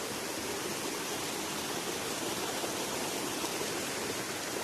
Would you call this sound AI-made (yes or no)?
no